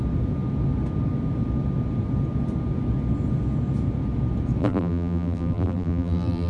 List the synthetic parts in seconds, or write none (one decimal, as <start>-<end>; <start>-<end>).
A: 4.6-6.5